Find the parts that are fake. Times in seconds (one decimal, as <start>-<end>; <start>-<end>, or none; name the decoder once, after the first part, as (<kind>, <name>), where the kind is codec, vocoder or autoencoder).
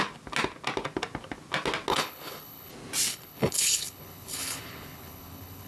1.9-2.7 (codec, HILCodec); 3.1-5.7